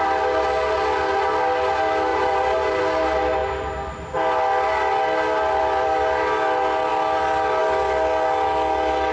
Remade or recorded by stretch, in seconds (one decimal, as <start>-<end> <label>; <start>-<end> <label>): 0.0-2.1 recorded; 2.1-2.8 remade; 2.8-9.1 recorded